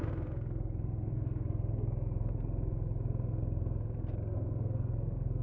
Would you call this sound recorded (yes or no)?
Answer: no